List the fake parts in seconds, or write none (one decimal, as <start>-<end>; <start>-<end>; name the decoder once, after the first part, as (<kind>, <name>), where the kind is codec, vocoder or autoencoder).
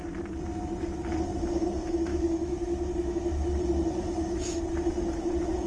2.1-3.5 (autoencoder, DAC-VAE)